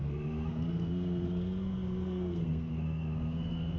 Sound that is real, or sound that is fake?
fake